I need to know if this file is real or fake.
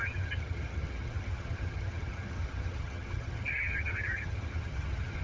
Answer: fake